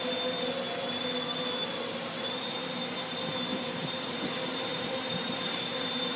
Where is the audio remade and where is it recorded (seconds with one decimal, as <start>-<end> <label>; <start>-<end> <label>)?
0.0-3.5 recorded; 3.5-4.2 remade; 4.2-4.7 recorded; 4.7-6.2 remade